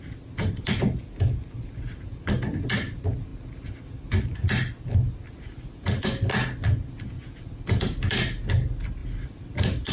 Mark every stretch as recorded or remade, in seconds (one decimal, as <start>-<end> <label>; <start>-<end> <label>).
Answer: 0.0-9.9 recorded